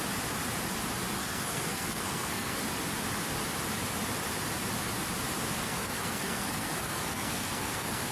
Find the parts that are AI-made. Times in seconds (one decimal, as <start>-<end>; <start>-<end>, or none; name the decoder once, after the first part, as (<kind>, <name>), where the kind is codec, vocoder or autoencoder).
1.2-2.6 (codec, SNAC); 5.6-8.1